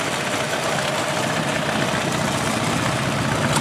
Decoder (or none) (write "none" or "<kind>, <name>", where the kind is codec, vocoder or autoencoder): none